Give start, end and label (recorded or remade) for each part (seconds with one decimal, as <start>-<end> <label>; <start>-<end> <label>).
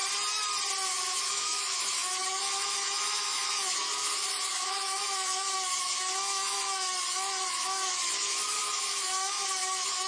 0.0-0.9 recorded; 0.9-10.1 remade